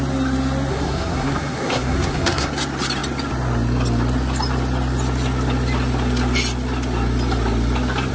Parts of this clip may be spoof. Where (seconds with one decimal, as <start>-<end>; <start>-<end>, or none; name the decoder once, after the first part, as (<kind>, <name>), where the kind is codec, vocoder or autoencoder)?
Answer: 0.7-2.5 (codec, SNAC)